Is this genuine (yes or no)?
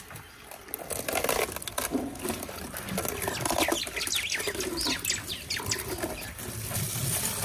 yes